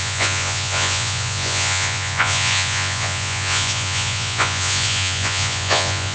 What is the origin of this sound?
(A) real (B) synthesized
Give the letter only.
B